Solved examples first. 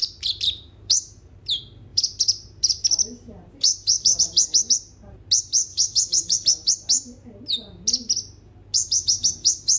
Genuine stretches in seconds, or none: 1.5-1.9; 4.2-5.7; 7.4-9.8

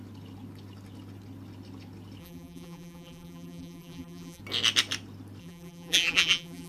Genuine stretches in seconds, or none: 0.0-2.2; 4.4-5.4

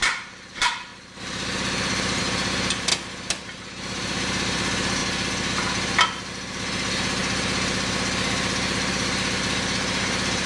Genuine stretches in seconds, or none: 2.9-3.4; 5.0-6.3; 7.2-8.9

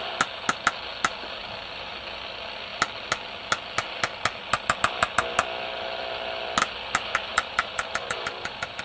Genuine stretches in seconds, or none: 0.0-7.3

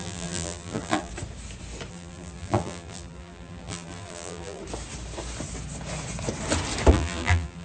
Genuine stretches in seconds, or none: 1.1-1.9; 4.6-6.9